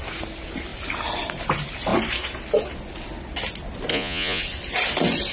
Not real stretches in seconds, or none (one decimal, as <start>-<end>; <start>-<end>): 3.9-4.4

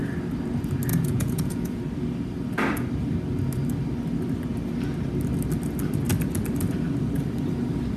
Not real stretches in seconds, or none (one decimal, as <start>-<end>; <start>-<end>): 0.9-1.8

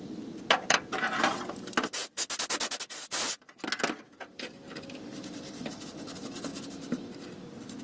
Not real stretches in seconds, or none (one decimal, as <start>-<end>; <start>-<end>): none